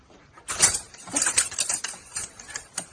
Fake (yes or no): yes